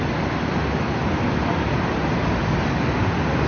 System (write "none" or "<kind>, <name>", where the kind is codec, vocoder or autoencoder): none